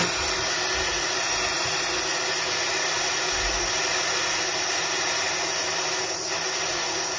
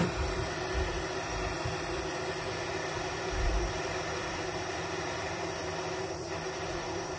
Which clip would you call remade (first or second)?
second